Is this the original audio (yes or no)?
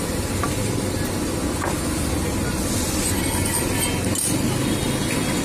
yes